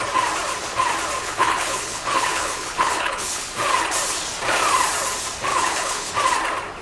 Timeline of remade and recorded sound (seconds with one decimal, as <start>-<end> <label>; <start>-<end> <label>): 0.0-1.2 recorded; 1.2-3.6 remade; 3.6-5.5 recorded; 5.5-6.1 remade; 6.1-6.8 recorded